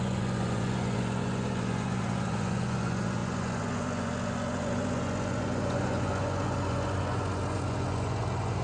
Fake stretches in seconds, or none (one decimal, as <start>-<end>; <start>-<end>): 0.0-8.6

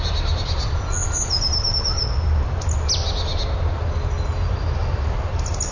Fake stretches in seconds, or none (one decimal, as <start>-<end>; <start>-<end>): 1.0-2.2; 4.8-5.3